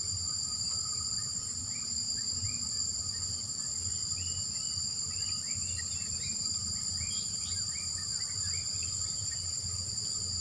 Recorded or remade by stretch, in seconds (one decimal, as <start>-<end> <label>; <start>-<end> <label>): 0.0-0.9 remade; 0.9-1.6 recorded; 1.6-2.2 remade; 2.2-5.8 recorded; 5.8-8.1 remade; 8.1-10.4 recorded